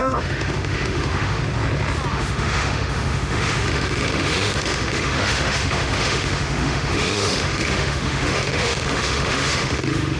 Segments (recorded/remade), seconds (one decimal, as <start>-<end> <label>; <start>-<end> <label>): 0.0-1.4 remade; 1.4-2.1 recorded; 2.1-10.2 remade